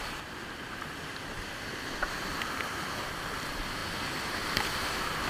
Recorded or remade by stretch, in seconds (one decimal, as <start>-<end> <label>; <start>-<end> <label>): 0.0-5.3 recorded